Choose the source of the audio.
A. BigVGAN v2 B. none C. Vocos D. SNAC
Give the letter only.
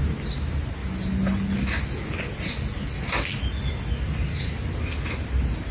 B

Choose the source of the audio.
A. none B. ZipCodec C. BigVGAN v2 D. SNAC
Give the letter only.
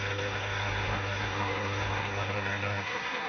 D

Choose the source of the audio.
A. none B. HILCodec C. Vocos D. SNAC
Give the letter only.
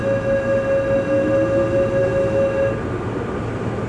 A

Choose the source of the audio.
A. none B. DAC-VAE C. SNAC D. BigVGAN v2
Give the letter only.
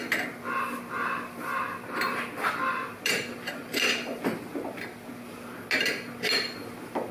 A